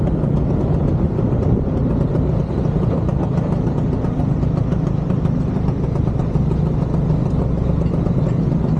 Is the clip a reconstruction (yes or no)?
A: no